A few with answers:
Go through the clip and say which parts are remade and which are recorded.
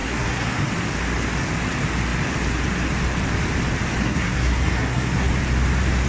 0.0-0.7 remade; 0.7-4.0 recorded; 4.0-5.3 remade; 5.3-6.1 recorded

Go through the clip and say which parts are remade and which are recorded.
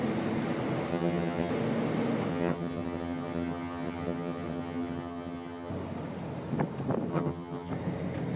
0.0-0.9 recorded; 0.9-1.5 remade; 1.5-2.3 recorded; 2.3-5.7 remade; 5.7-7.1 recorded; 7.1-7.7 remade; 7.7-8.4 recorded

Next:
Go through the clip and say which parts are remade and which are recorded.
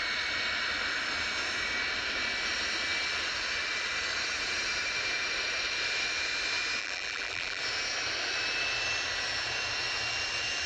0.0-6.8 recorded; 6.8-7.6 remade; 7.6-10.7 recorded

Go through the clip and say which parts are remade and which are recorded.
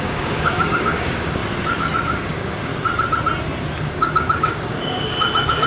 0.0-1.4 remade; 1.4-2.1 recorded; 2.1-2.7 remade; 2.7-3.8 recorded; 3.8-5.7 remade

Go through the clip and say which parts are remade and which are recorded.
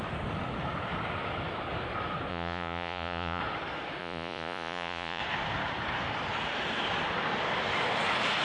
0.0-2.3 recorded; 2.3-3.4 remade; 3.4-4.0 recorded; 4.0-5.2 remade; 5.2-8.4 recorded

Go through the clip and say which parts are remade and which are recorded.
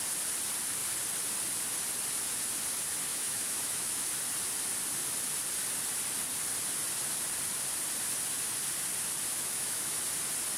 0.0-3.1 recorded; 3.1-4.1 remade; 4.1-9.3 recorded; 9.3-10.0 remade; 10.0-10.6 recorded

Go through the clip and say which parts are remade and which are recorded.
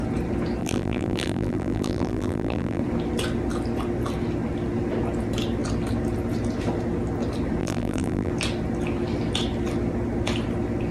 0.0-0.6 recorded; 0.6-2.8 remade; 2.8-7.6 recorded; 7.6-8.3 remade; 8.3-10.9 recorded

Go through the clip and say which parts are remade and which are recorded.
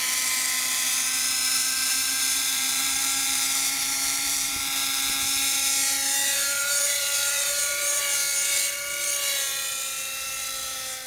0.0-1.9 recorded; 1.9-4.6 remade; 4.6-6.3 recorded; 6.3-8.0 remade; 8.0-11.1 recorded